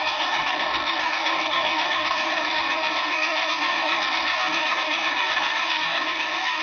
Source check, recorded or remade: remade